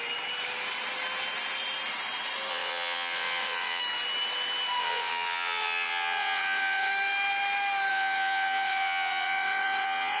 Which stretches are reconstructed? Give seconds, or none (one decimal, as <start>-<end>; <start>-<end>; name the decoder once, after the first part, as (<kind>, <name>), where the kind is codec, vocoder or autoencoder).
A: 2.5-3.8 (vocoder, WaveNeXt); 4.8-6.9; 7.9-10.2